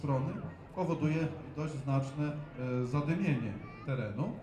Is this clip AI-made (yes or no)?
no